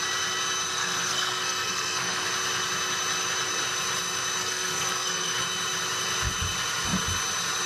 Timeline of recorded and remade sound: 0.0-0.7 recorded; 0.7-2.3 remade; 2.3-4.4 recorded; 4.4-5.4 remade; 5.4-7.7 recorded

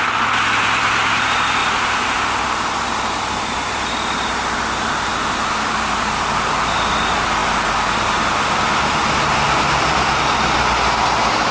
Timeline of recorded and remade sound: 0.0-11.5 recorded